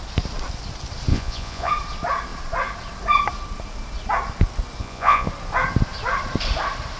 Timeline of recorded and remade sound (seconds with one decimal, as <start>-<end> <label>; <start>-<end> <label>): 0.0-1.1 recorded; 1.1-1.7 remade; 1.7-4.8 recorded; 4.8-5.3 remade; 5.3-7.0 recorded